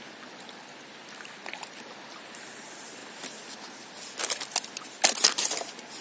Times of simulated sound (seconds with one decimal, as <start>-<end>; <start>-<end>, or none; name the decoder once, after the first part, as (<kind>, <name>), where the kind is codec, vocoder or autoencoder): none